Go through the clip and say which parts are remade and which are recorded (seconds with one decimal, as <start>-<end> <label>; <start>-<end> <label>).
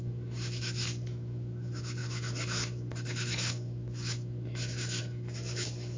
0.0-6.0 remade